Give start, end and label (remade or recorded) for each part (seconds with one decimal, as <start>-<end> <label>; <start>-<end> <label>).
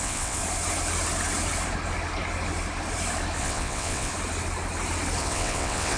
0.0-0.4 remade; 0.4-3.4 recorded; 3.4-4.1 remade; 4.1-5.2 recorded; 5.2-6.0 remade